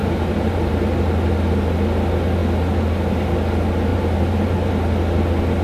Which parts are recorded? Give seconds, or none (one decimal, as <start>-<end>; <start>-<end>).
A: 0.7-3.9; 4.7-5.6